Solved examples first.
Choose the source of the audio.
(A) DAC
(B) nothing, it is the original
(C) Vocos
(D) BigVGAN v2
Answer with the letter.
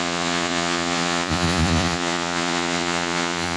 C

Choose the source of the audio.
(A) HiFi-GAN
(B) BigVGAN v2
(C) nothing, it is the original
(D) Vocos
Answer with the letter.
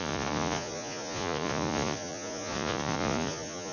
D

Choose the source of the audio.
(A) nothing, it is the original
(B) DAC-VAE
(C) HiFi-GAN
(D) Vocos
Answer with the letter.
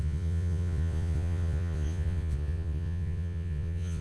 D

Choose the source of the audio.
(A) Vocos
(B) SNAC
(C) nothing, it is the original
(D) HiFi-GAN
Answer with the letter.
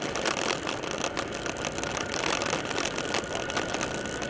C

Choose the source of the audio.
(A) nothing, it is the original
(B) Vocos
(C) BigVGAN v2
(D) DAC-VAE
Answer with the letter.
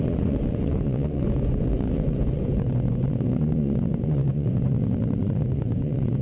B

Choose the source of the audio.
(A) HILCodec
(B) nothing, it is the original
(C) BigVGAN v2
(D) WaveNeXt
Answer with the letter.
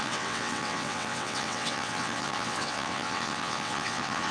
D